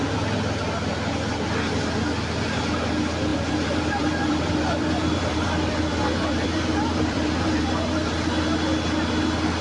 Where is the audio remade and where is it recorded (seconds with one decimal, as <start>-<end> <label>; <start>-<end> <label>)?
0.0-3.3 recorded; 3.3-8.3 remade; 8.3-9.6 recorded